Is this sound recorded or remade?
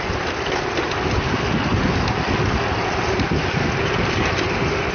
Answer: recorded